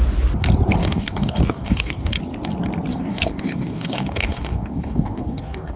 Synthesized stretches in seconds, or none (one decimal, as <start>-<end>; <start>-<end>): 0.8-2.2; 2.9-5.8